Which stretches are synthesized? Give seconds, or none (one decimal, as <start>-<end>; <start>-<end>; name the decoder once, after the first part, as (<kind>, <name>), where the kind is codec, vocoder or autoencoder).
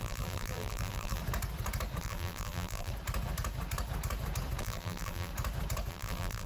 0.0-1.2 (vocoder, BigVGAN v2); 2.0-2.9; 4.6-5.3; 5.9-6.5